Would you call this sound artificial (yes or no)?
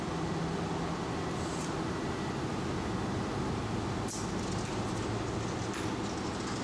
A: no